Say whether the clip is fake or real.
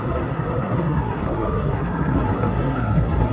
fake